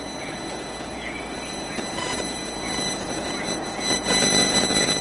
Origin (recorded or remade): remade